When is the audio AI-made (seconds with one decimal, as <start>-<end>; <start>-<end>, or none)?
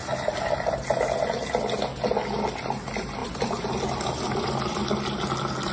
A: none